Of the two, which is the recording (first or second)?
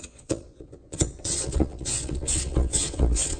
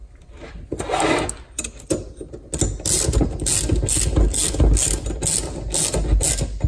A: second